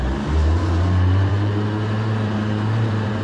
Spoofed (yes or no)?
yes